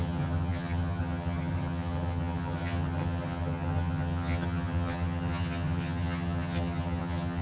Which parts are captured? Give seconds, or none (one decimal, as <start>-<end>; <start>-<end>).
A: none